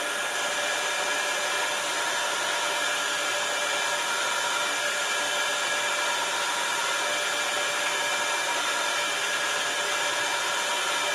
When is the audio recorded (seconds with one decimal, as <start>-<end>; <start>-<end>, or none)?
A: 0.0-11.1